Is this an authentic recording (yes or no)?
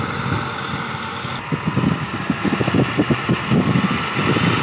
yes